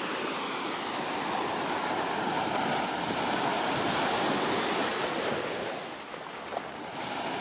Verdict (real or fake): real